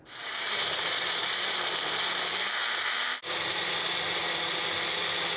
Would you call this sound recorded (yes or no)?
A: yes